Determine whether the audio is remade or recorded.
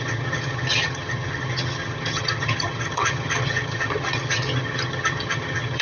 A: remade